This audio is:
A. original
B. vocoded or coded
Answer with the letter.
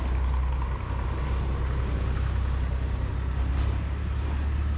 A